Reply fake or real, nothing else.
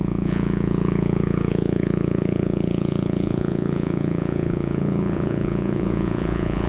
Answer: fake